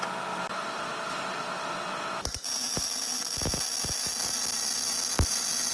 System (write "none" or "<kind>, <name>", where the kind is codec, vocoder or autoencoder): none